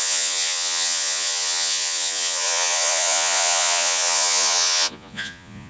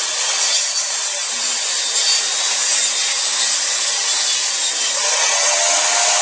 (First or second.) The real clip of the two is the second